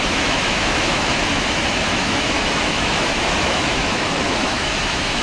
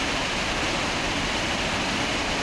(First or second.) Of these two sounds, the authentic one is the second